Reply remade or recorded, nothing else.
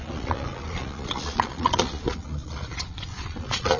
remade